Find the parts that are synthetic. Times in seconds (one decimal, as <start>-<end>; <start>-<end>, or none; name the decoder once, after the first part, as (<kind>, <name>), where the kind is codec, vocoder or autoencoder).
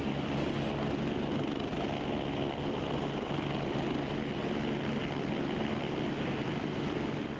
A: none